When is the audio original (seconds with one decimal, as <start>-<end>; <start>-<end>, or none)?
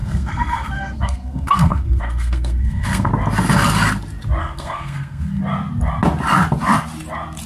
3.1-4.4; 5.4-7.5